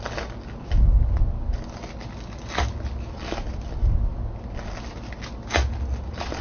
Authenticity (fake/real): real